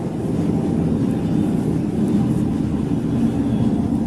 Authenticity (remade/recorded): recorded